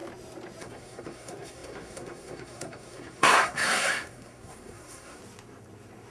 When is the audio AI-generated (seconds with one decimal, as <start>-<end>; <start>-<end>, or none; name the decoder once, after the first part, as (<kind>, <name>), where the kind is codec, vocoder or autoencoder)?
0.6-5.2 (codec, SNAC)